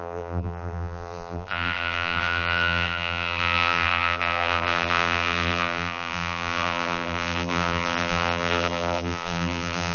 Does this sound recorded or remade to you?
remade